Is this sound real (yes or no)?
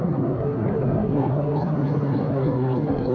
no